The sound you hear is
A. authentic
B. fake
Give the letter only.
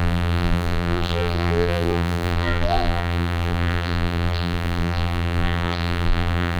B